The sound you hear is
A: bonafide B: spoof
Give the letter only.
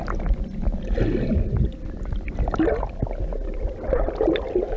A